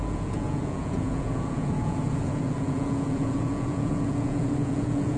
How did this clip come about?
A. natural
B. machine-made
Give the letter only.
B